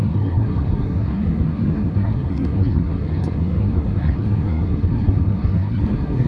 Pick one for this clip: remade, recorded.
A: remade